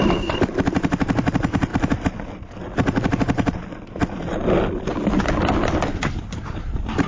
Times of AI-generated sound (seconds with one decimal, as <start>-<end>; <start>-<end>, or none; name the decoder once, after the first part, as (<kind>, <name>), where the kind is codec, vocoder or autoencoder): none

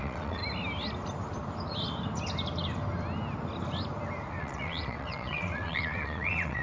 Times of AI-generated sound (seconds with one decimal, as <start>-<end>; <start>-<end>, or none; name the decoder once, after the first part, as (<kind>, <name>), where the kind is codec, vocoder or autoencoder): 0.0-0.4 (vocoder, WaveNeXt); 4.4-6.6